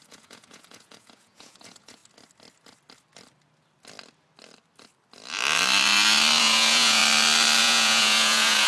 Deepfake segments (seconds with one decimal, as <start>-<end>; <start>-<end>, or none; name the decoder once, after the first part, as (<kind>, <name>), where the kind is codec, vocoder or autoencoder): 0.0-2.0 (vocoder, Vocos); 6.4-7.0; 7.6-8.7